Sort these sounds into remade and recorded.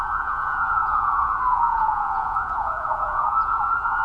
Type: remade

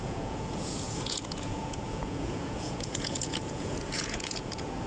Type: remade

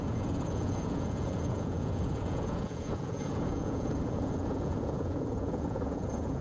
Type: remade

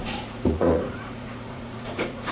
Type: remade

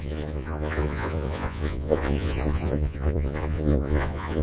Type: remade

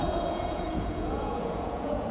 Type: remade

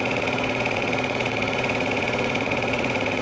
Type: remade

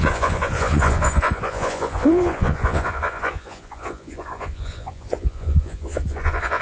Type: remade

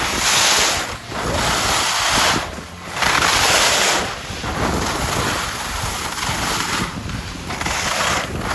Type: recorded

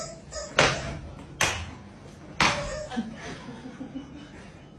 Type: recorded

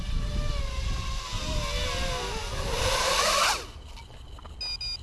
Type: recorded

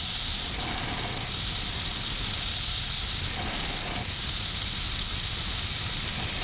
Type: recorded